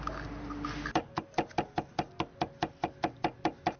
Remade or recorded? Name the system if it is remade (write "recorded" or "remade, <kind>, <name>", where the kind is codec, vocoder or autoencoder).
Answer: recorded